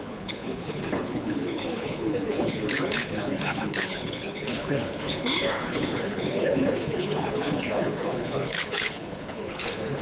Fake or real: fake